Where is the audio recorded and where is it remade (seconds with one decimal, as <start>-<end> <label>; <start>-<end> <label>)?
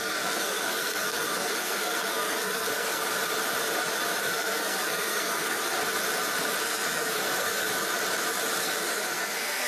0.0-3.0 remade; 3.0-4.2 recorded; 4.2-5.6 remade; 5.6-6.6 recorded; 6.6-7.7 remade; 7.7-8.6 recorded; 8.6-9.7 remade